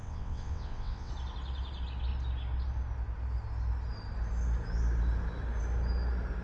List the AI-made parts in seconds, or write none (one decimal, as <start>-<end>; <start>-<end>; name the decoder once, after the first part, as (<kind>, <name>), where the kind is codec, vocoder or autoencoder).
0.0-1.1 (vocoder, WaveNeXt)